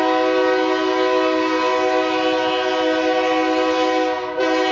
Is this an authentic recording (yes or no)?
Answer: yes